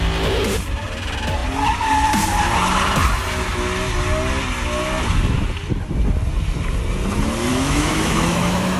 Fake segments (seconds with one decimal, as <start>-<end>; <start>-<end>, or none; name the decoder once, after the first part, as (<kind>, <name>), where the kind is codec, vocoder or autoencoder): 7.5-8.8 (autoencoder, DAC-VAE)

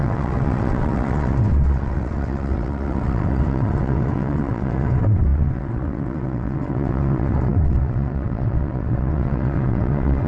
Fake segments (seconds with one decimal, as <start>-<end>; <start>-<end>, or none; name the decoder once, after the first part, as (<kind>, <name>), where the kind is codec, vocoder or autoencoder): 0.0-10.3 (vocoder, WaveNeXt)